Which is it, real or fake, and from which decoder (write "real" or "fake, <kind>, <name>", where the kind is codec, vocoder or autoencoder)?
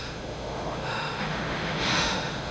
fake, autoencoder, DAC-VAE